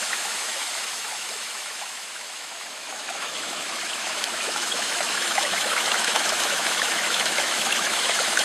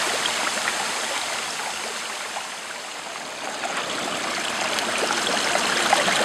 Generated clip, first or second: first